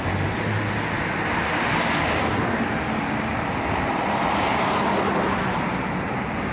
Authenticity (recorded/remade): recorded